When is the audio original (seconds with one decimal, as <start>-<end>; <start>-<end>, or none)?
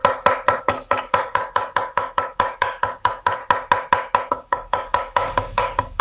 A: 0.0-0.6; 3.4-4.3